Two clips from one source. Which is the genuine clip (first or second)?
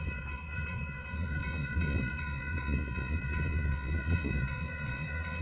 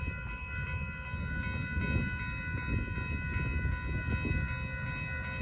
second